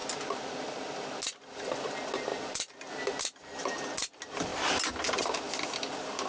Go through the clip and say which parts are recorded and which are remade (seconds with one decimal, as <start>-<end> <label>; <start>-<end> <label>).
0.0-6.3 recorded